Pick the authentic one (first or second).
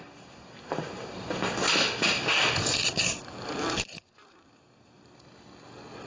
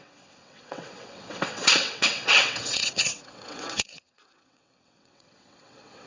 first